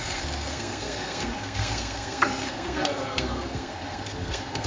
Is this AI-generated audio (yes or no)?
yes